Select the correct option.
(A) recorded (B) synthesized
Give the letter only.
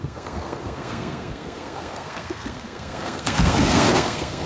B